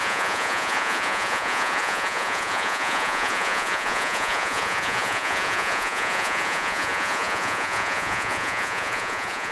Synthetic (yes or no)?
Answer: yes